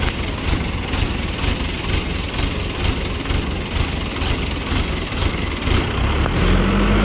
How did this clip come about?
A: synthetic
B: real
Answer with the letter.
B